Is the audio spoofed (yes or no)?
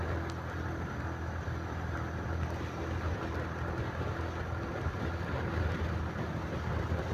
no